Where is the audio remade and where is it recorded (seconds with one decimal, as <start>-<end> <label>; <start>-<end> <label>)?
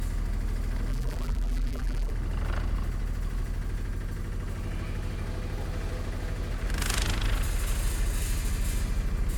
0.0-0.9 recorded; 0.9-2.1 remade; 2.1-9.4 recorded